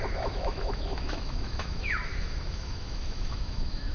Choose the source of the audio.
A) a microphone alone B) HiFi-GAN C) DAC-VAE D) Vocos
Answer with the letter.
C